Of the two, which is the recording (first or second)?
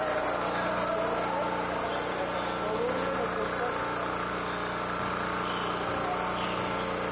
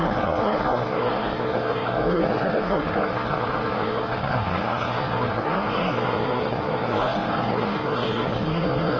first